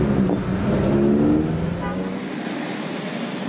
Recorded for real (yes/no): yes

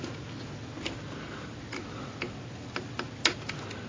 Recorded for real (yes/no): yes